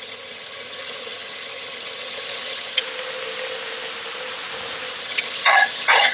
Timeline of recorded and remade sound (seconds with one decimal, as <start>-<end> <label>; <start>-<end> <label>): 0.0-2.8 remade; 2.8-5.0 recorded; 5.0-6.1 remade